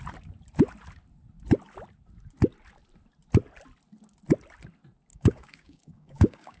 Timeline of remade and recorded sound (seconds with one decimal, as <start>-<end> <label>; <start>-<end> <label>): 0.0-5.1 recorded; 5.1-6.6 remade